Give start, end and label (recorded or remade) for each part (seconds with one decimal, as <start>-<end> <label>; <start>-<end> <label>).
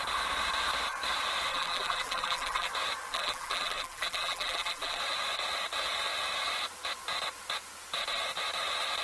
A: 0.0-1.5 recorded; 1.5-2.7 remade; 2.7-3.1 recorded; 3.1-5.0 remade; 5.0-9.0 recorded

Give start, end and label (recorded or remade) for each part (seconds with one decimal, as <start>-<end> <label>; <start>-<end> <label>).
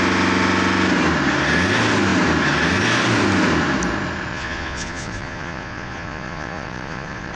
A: 0.0-4.3 recorded; 4.3-7.3 remade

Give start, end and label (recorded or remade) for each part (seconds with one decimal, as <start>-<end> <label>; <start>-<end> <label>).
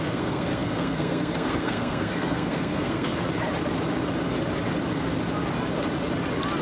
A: 0.0-3.1 remade; 3.1-6.6 recorded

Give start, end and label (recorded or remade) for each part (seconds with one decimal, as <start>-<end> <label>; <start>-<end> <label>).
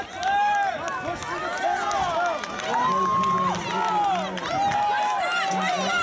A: 0.0-6.0 recorded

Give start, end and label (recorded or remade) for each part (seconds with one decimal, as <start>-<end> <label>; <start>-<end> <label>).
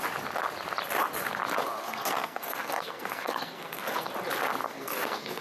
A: 0.0-1.8 recorded; 1.8-4.1 remade; 4.1-4.6 recorded; 4.6-5.4 remade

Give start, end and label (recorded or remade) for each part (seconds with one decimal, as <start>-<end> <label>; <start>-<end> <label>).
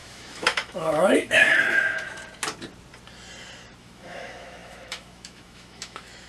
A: 0.0-2.2 remade; 2.2-3.8 recorded; 3.8-6.3 remade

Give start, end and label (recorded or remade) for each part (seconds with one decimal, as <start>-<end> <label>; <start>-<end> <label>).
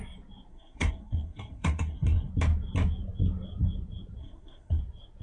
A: 0.0-0.5 recorded; 0.5-2.3 remade; 2.3-4.2 recorded; 4.2-4.8 remade; 4.8-5.2 recorded